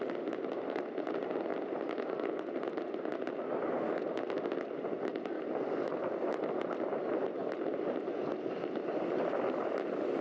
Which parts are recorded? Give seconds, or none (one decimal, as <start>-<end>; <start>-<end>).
0.0-10.2